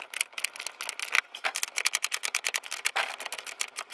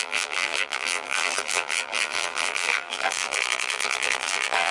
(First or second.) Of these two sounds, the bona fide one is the first